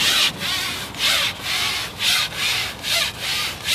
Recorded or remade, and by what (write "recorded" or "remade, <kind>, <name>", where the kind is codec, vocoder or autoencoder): recorded